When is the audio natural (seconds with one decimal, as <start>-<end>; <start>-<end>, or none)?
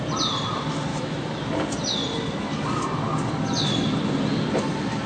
0.0-0.9; 1.4-5.1